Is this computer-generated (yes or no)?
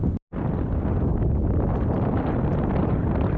no